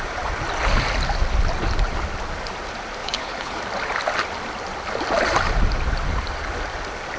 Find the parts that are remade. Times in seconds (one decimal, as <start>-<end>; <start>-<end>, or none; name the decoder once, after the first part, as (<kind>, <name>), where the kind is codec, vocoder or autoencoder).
3.0-3.6 (codec, HILCodec)